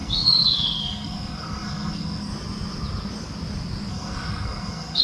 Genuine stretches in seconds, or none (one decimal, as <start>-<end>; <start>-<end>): 2.3-3.9